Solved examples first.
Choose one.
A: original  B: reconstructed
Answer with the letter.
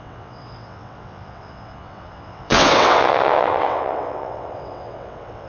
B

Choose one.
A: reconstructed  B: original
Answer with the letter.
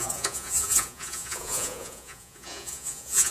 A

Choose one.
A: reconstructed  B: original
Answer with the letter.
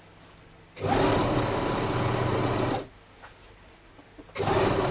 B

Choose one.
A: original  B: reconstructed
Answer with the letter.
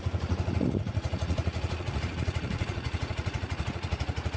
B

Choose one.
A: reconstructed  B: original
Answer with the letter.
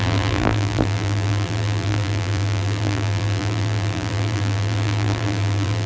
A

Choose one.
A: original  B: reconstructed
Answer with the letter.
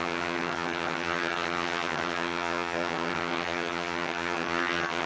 B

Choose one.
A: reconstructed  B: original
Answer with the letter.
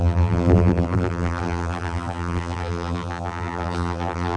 A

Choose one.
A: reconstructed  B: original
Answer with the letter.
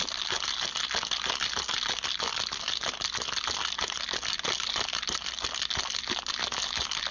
B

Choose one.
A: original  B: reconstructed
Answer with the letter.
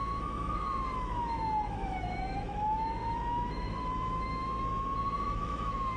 B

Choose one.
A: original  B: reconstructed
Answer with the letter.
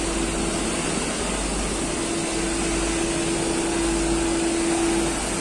A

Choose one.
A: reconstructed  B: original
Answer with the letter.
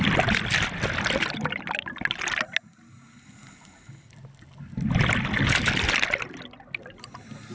B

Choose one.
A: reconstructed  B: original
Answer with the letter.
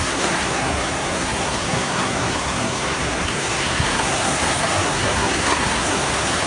A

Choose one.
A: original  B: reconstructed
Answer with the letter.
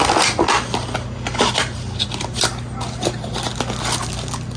A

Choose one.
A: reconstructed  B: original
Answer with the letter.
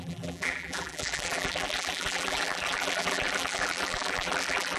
A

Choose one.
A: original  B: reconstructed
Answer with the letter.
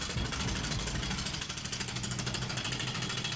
A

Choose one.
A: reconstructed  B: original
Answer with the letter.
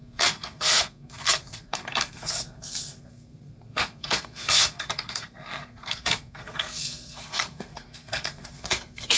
A